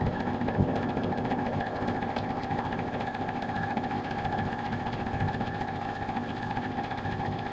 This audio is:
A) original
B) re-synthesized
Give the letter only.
B